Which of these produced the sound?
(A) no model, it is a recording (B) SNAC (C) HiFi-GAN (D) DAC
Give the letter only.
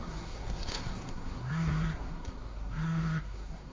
B